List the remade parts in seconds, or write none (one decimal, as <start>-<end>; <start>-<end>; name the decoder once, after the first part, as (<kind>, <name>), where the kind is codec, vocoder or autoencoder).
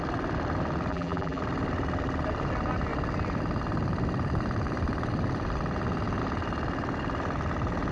0.9-1.4 (vocoder, BigVGAN v2)